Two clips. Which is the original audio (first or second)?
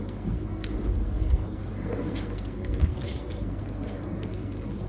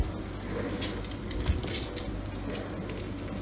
second